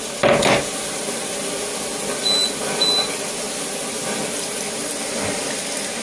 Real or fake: real